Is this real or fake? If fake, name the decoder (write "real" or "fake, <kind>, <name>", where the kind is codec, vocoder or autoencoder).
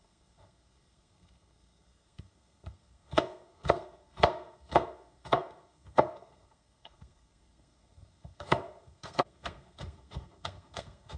fake, codec, SNAC